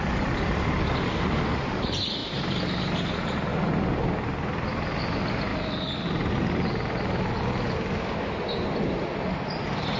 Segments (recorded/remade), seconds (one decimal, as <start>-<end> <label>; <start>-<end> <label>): 0.0-10.0 recorded